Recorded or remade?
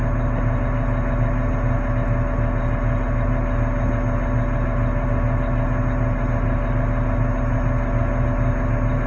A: recorded